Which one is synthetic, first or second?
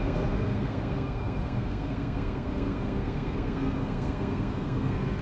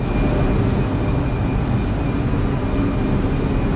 first